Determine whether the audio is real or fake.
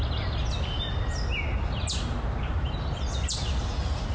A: real